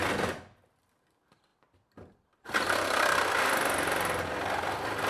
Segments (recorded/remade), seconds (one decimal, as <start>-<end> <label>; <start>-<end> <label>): 0.0-5.1 recorded